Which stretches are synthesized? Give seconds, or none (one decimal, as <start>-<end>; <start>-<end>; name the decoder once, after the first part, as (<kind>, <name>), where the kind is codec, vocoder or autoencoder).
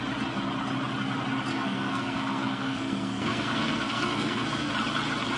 1.5-4.7 (codec, SNAC)